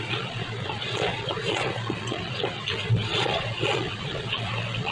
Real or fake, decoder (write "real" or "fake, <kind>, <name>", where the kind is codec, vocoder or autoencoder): fake, vocoder, Vocos